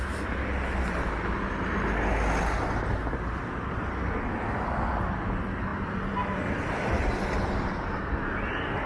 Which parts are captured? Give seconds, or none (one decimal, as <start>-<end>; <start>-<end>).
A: 0.0-8.9